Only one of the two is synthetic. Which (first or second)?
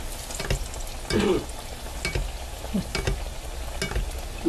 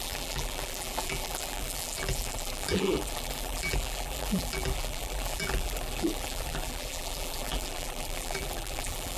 second